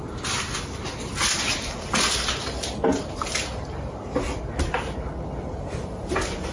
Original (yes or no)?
yes